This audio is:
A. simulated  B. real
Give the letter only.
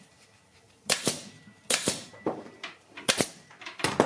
A